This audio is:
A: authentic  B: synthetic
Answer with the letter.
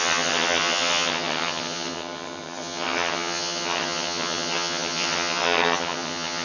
B